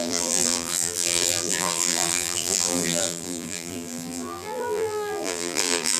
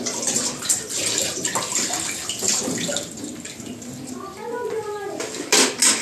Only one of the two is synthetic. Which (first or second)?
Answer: first